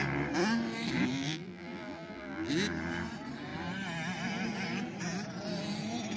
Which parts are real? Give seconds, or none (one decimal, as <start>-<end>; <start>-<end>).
0.0-1.1; 2.5-6.2